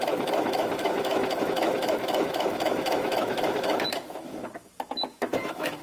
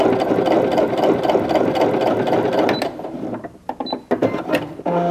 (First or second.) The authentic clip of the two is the second